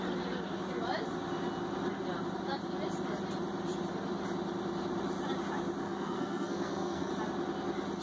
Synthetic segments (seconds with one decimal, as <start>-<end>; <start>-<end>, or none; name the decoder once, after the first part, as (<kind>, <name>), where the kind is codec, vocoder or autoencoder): 5.8-7.1 (codec, SNAC)